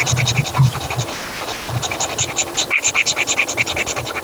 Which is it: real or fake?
real